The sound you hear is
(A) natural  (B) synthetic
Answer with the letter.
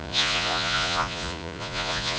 B